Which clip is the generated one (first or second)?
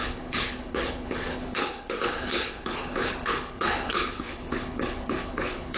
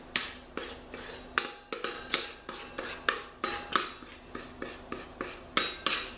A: first